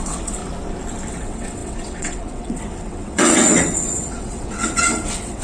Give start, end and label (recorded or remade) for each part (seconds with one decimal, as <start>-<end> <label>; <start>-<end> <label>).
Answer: 0.0-0.4 remade; 0.4-1.1 recorded; 1.1-5.4 remade